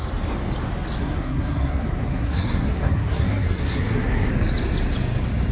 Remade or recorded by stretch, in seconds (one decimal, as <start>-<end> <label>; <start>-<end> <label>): 0.0-1.0 recorded; 1.0-4.3 remade; 4.3-5.5 recorded